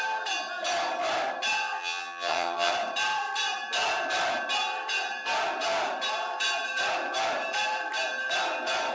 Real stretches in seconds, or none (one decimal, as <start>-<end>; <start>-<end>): 0.0-1.8; 2.7-8.9